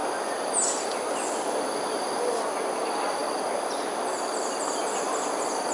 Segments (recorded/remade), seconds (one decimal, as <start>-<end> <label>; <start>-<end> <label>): 0.0-5.7 recorded